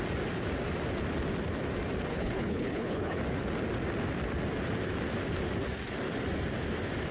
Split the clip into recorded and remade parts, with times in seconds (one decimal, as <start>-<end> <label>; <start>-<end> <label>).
0.0-2.1 recorded; 2.1-3.2 remade; 3.2-7.1 recorded